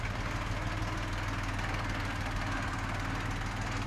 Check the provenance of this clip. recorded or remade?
recorded